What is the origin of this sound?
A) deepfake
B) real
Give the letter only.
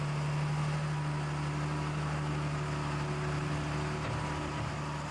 B